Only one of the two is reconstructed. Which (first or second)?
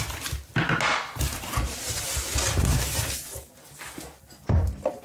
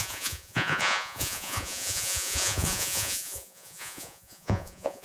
second